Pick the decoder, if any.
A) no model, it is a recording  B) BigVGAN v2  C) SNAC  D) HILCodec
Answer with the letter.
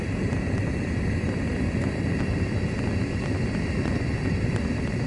A